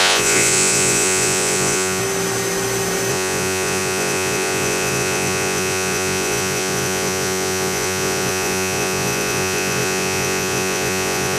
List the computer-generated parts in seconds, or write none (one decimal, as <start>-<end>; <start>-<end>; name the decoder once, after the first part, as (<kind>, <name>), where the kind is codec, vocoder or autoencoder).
0.0-2.0 (vocoder, Vocos); 3.1-11.4